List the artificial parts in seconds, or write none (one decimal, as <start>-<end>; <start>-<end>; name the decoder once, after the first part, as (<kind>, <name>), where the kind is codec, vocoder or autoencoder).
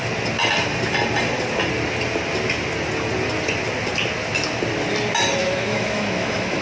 5.4-6.6 (autoencoder, DAC-VAE)